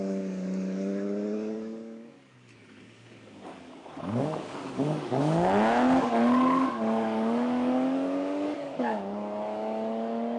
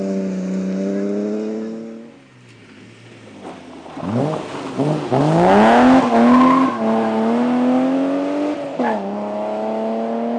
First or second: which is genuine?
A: second